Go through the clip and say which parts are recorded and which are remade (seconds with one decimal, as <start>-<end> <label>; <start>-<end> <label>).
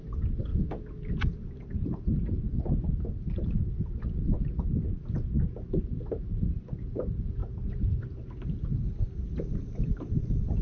0.0-0.5 remade; 0.5-1.1 recorded; 1.1-2.5 remade; 2.5-5.8 recorded; 5.8-10.6 remade